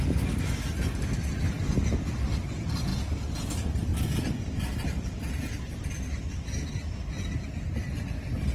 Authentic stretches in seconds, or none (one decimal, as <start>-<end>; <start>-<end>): 0.0-8.5